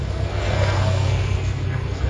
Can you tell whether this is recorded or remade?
remade